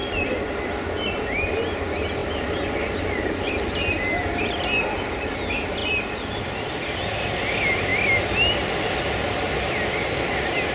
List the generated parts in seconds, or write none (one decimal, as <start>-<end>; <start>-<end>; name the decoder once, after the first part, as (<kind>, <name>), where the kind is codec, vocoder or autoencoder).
none